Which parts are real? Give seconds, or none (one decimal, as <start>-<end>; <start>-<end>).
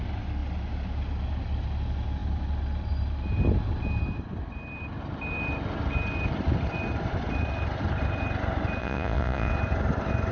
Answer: 0.0-8.8; 9.5-10.3